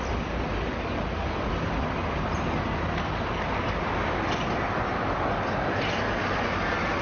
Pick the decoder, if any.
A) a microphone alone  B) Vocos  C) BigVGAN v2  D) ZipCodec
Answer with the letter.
A